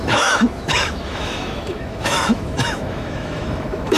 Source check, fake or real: fake